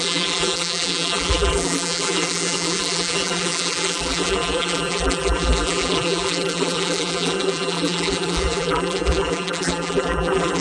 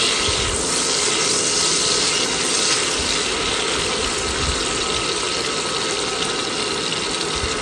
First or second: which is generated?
first